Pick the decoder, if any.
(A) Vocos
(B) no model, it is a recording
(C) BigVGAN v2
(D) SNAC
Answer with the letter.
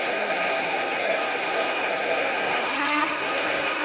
D